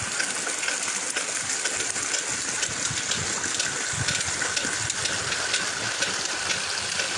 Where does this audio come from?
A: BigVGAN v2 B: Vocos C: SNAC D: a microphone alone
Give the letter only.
D